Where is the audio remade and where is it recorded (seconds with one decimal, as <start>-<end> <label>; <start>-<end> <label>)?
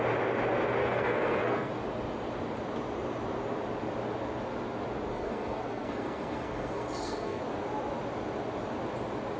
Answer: 0.0-0.8 recorded; 0.8-1.7 remade; 1.7-5.1 recorded; 5.1-7.4 remade; 7.4-9.4 recorded